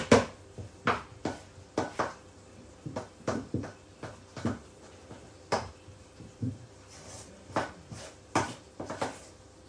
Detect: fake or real real